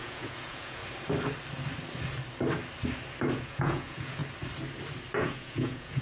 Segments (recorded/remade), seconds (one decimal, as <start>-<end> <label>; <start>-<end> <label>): 0.0-0.8 remade; 0.8-3.3 recorded; 3.3-4.2 remade; 4.2-5.2 recorded; 5.2-6.0 remade